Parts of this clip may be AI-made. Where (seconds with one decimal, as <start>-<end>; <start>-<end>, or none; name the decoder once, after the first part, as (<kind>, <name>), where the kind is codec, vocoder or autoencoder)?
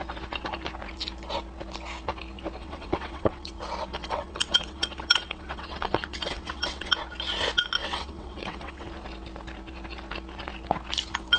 2.6-3.5 (vocoder, WaveNeXt); 3.9-6.9; 7.8-8.9